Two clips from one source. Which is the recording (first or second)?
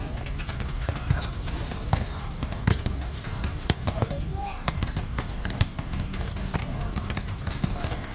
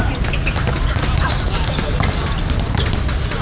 second